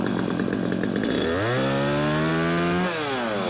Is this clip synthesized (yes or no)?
no